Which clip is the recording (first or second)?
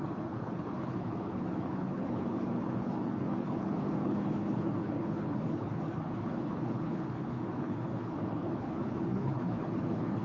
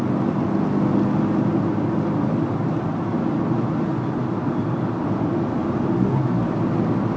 second